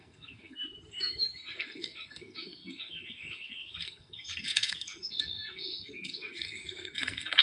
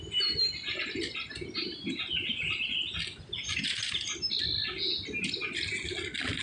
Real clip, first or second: second